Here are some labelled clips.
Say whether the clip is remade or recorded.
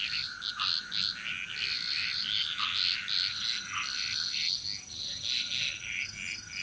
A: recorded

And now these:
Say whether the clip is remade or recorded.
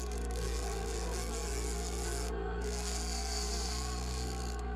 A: remade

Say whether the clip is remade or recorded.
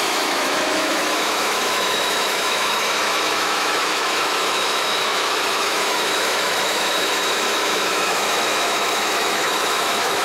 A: remade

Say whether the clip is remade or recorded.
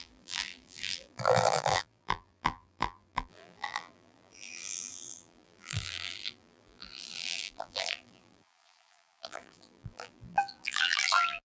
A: remade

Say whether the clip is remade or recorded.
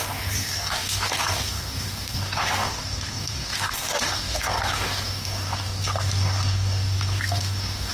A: remade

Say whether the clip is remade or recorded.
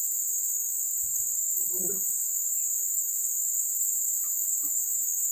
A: remade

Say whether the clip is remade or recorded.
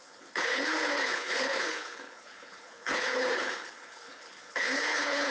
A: remade